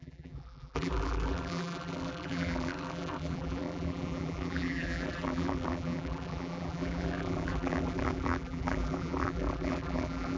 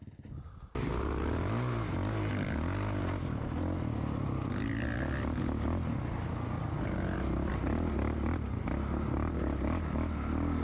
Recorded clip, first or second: second